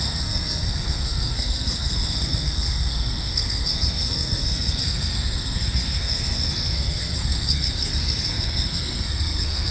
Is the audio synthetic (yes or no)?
yes